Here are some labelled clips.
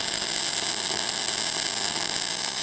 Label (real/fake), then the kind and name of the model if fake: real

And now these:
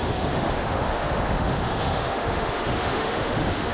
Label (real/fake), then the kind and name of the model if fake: fake, autoencoder, DAC-VAE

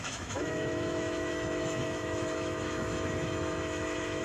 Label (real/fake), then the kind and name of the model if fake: fake, autoencoder, DAC-VAE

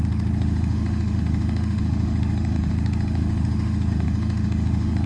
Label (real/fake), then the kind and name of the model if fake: fake, autoencoder, DAC-VAE